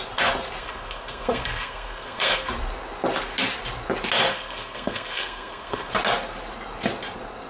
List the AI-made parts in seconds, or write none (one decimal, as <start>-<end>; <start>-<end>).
0.6-2.5; 4.3-5.9